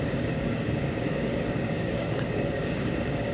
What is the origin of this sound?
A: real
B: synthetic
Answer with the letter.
B